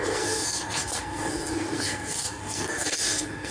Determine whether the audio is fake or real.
fake